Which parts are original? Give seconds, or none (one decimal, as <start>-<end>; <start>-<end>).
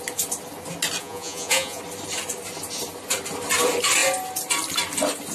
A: 0.0-1.0; 1.8-5.3